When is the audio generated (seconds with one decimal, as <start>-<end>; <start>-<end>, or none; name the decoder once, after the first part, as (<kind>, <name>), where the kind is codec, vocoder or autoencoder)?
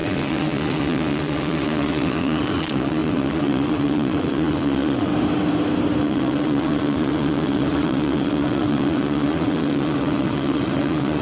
0.0-5.1 (vocoder, WaveNeXt); 6.0-11.2